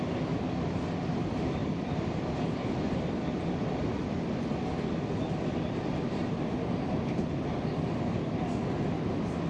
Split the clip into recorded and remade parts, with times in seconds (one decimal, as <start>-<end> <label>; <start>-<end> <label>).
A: 0.0-1.6 recorded; 1.6-5.0 remade; 5.0-9.5 recorded